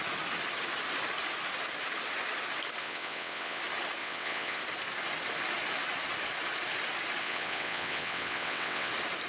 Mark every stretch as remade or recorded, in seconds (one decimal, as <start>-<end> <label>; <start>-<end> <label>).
0.0-2.8 recorded; 2.8-3.6 remade; 3.6-4.0 recorded; 4.0-4.6 remade; 4.6-7.2 recorded; 7.2-8.9 remade; 8.9-9.3 recorded